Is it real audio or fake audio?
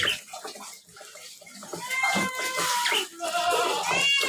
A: real